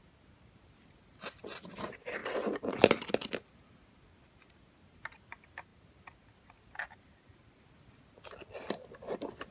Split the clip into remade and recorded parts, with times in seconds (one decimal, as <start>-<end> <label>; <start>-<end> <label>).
0.0-9.5 recorded